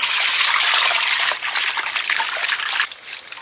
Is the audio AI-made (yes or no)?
no